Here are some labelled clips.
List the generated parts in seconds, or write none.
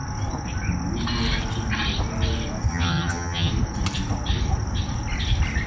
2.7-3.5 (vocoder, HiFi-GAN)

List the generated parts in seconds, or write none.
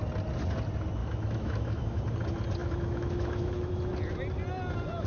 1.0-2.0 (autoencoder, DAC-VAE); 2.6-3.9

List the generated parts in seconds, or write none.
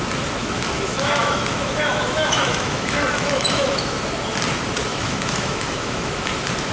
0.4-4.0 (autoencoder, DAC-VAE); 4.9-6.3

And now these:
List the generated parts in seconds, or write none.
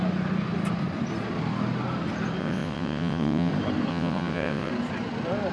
2.4-3.5 (vocoder, WaveNeXt); 3.9-4.7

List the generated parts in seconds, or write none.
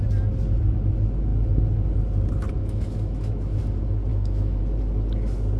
2.6-3.6 (autoencoder, DAC-VAE); 4.1-4.6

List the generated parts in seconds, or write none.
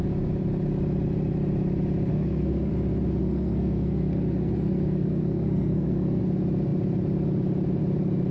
2.1-2.7 (codec, SNAC); 3.2-6.2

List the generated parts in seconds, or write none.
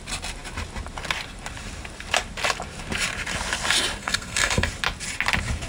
4.0-4.7 (codec, SNAC)